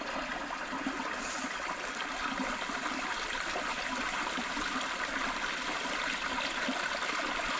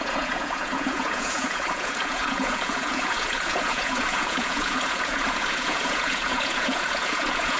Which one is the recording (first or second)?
first